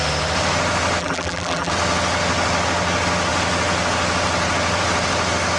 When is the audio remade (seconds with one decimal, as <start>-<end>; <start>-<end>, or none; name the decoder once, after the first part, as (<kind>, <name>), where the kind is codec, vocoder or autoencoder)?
1.0-1.7 (vocoder, BigVGAN v2)